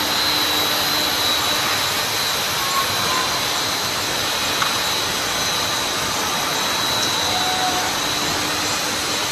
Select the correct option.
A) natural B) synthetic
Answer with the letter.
A